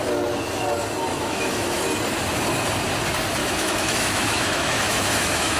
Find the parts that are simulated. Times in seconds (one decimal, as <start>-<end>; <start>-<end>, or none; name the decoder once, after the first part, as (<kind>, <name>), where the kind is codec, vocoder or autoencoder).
1.1-1.8 (autoencoder, DAC-VAE); 3.4-5.6